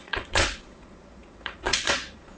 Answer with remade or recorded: remade